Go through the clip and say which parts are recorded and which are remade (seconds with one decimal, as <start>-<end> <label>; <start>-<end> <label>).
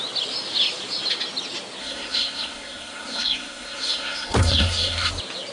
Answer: 0.0-1.8 recorded; 1.8-5.1 remade; 5.1-5.5 recorded